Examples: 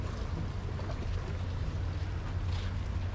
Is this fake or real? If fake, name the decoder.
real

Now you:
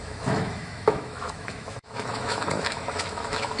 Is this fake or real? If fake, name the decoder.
fake, autoencoder, DAC-VAE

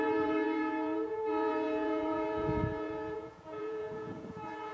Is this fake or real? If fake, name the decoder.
fake, vocoder, Vocos